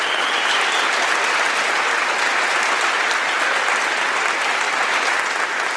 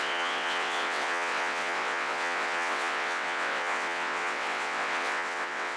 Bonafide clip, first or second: first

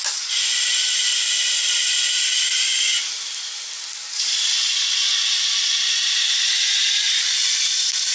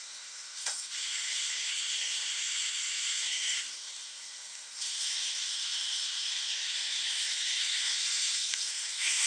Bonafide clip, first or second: first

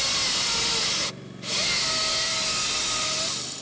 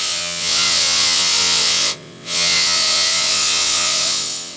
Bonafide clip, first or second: first